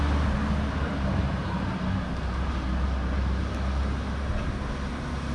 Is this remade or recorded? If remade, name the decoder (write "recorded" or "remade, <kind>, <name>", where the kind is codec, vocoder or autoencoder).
recorded